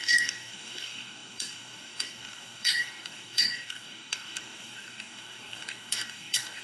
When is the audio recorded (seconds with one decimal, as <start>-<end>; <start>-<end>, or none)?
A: none